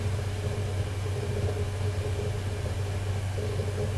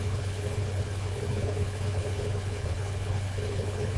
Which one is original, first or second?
first